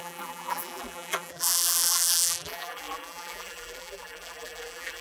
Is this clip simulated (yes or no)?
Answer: yes